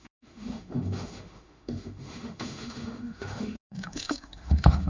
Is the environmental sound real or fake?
fake